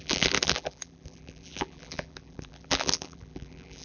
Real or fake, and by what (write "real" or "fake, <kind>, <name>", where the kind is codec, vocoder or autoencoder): fake, vocoder, BigVGAN v2